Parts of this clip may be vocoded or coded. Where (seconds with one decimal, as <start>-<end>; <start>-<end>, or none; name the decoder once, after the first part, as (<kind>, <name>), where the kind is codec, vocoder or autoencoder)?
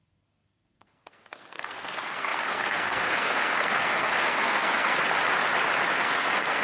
0.0-5.0 (codec, SNAC); 5.9-6.6